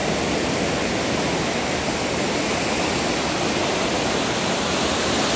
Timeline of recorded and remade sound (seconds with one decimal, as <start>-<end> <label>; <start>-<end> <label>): 0.0-5.4 recorded